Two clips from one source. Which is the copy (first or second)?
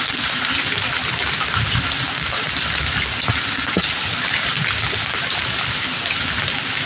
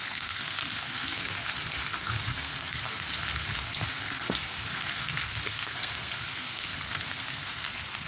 second